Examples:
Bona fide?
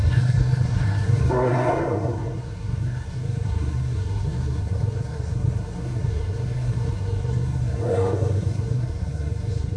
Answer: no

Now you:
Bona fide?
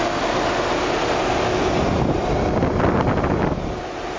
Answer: yes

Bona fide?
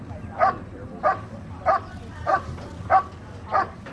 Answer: yes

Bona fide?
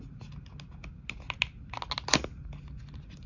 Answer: yes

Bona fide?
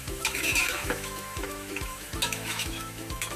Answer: no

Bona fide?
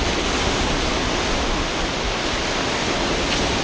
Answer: yes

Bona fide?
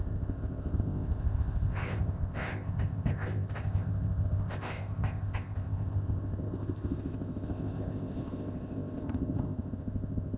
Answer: no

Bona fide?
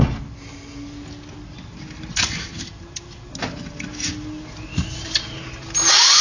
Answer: yes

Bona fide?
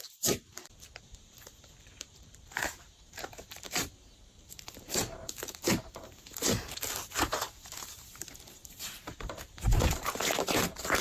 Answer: no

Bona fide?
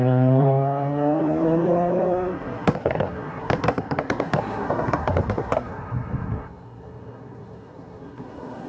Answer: no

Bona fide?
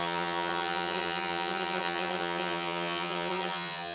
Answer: no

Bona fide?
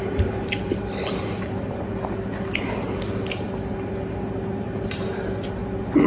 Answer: yes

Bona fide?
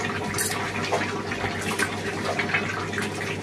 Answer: yes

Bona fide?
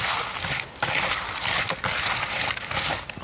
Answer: yes